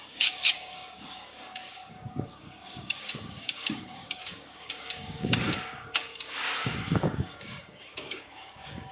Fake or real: fake